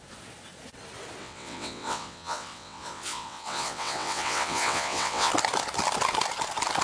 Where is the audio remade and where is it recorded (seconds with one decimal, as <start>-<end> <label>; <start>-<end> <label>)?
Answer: 0.0-1.2 recorded; 1.2-5.3 remade; 5.3-6.8 recorded